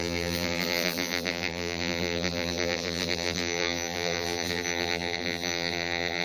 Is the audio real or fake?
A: fake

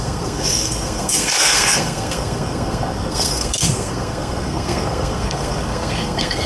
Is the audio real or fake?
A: fake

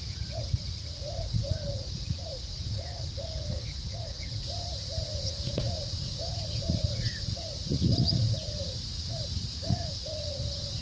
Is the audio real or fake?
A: fake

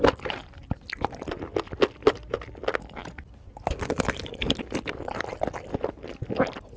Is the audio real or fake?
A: real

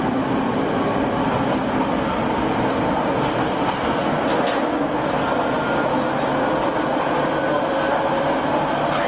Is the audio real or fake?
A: real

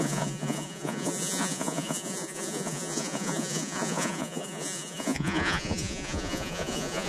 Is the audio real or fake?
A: fake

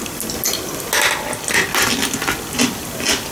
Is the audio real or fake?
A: real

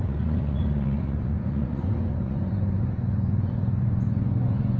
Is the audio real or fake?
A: fake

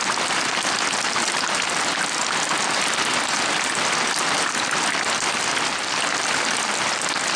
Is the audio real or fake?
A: real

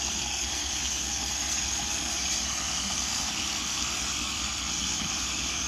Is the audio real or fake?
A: fake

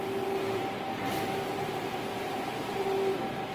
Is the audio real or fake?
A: real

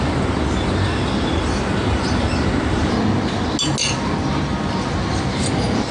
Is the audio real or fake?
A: real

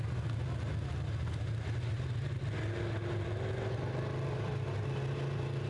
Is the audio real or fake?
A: real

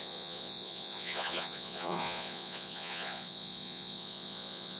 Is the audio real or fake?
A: fake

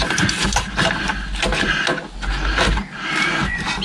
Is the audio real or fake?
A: real